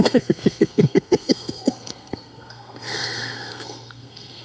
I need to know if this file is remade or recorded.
remade